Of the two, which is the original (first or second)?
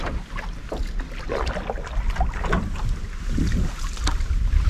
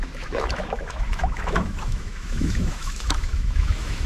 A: first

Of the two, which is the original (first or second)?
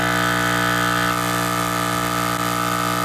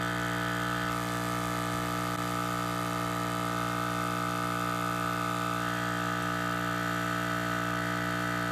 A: first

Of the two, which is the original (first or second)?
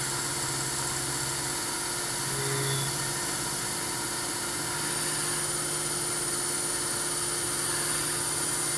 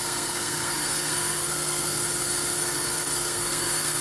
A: first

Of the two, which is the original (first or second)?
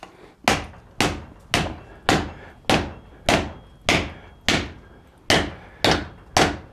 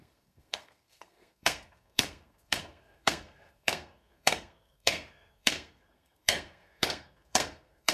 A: first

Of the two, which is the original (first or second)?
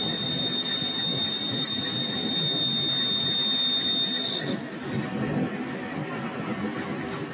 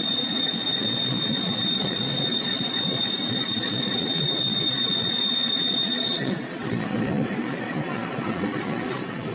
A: first